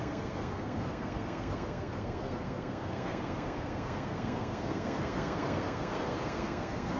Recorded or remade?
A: remade